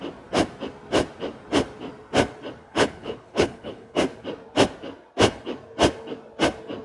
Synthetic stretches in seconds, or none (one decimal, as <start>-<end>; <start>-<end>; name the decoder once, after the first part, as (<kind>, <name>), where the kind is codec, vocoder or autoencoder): 2.6-4.0 (codec, HILCodec)